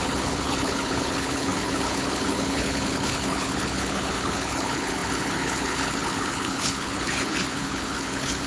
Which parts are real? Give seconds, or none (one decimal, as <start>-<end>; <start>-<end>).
none